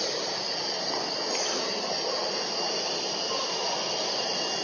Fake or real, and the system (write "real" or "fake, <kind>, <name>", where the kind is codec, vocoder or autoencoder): real